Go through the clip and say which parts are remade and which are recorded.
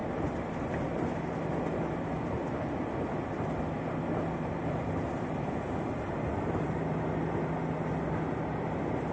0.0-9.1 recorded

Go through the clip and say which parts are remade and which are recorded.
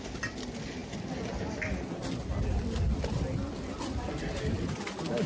0.0-5.3 recorded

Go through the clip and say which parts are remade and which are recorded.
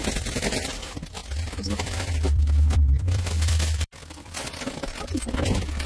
0.0-5.9 remade